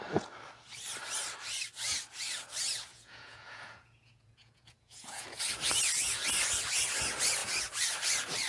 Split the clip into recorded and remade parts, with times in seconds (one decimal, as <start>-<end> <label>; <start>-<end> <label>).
0.0-2.9 recorded; 2.9-5.4 remade; 5.4-8.5 recorded